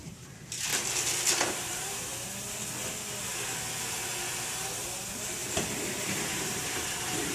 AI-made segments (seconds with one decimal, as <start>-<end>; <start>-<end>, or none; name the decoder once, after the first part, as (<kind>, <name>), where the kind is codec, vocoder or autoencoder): 0.0-0.7 (vocoder, BigVGAN v2); 1.3-2.1; 4.8-7.3

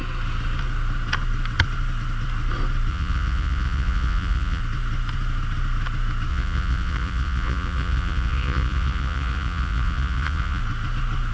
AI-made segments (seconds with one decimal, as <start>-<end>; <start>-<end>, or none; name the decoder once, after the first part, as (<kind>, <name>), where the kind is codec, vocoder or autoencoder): 2.9-4.6 (vocoder, Vocos); 6.3-10.6